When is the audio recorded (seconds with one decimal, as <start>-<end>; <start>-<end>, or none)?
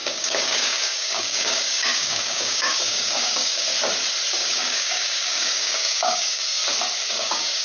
3.7-4.3; 6.6-7.1